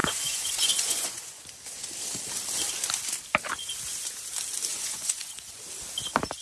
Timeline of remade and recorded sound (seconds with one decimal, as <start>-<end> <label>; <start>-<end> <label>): 0.0-1.4 remade; 1.4-4.7 recorded; 4.7-5.6 remade; 5.6-6.4 recorded